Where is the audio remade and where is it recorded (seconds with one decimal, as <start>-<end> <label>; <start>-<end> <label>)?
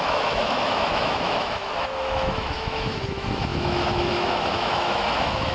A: 0.0-5.5 remade